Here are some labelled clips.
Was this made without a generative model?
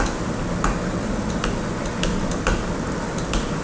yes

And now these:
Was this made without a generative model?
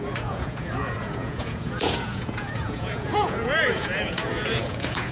no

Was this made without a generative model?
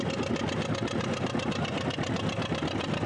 yes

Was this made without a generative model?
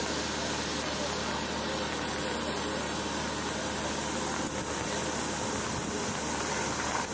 yes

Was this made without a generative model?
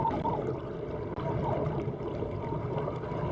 yes